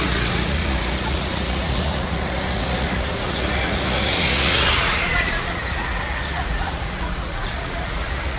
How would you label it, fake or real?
fake